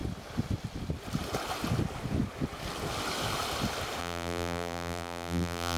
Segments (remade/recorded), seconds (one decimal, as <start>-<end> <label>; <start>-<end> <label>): 0.0-4.0 recorded; 4.0-5.8 remade